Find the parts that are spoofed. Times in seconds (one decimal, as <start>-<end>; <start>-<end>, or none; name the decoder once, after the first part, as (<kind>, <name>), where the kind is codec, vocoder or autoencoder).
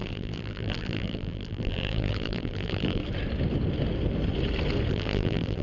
0.0-3.0 (vocoder, BigVGAN v2); 4.9-5.6